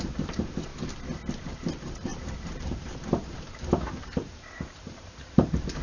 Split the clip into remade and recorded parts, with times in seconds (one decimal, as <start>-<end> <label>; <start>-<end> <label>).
0.0-0.7 remade; 0.7-1.3 recorded; 1.3-5.8 remade